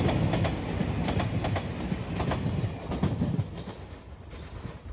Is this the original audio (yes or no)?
yes